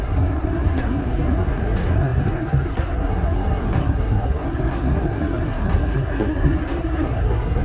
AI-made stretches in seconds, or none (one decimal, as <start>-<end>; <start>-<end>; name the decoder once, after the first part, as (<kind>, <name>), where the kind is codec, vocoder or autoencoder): 0.0-7.6 (codec, SNAC)